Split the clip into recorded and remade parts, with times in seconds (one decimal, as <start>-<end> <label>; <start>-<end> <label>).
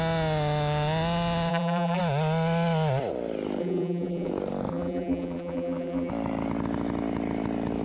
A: 0.0-1.5 recorded; 1.5-2.0 remade; 2.0-3.6 recorded; 3.6-4.3 remade; 4.3-4.7 recorded; 4.7-6.1 remade; 6.1-7.8 recorded